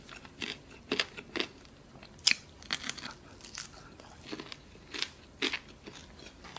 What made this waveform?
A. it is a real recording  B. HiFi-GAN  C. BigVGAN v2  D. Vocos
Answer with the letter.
A